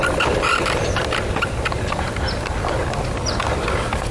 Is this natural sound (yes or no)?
yes